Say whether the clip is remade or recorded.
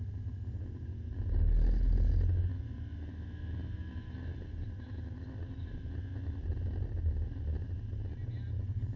recorded